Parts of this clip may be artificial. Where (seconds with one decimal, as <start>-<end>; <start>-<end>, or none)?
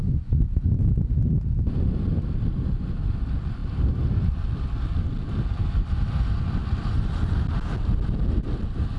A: 0.0-0.7